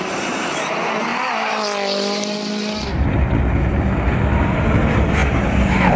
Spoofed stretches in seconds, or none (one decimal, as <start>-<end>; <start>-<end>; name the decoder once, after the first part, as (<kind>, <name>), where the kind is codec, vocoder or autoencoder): none